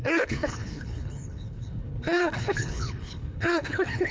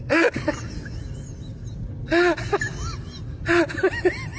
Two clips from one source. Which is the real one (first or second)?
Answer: second